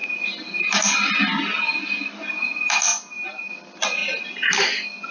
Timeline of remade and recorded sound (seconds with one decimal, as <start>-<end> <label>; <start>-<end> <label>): 0.0-2.9 recorded; 2.9-3.5 remade; 3.5-5.1 recorded